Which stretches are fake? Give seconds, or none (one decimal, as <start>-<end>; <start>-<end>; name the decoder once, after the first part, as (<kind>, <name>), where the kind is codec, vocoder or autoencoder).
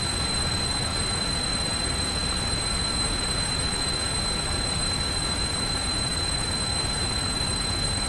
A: 0.0-8.1 (vocoder, Vocos)